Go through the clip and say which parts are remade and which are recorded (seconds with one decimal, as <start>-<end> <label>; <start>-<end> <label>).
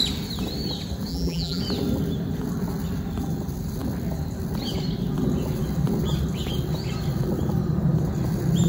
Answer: 0.0-1.1 recorded; 1.1-1.6 remade; 1.6-8.7 recorded